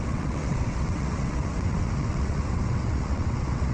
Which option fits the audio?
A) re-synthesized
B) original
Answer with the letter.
A